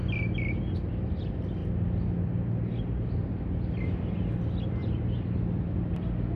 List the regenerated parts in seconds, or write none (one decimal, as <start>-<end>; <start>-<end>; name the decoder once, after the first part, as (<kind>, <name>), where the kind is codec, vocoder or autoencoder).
none